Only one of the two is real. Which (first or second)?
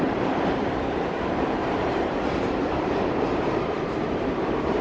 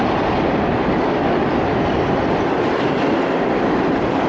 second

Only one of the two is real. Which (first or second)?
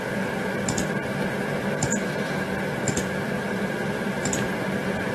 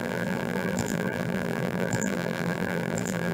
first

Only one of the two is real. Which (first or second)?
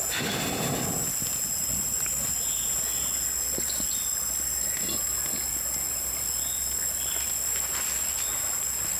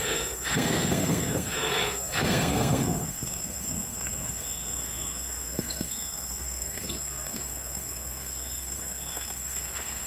first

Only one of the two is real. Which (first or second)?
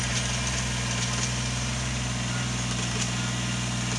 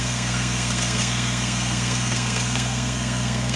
first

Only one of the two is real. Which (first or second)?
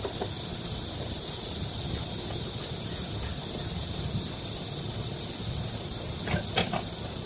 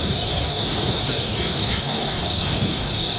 first